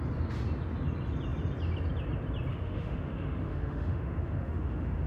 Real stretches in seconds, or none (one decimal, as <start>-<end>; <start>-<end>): 0.0-2.5

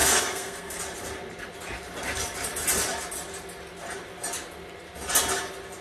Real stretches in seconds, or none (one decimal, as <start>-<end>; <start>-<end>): 0.8-5.8

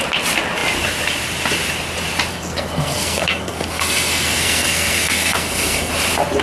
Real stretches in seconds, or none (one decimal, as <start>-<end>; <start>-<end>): 0.0-2.3; 5.9-6.4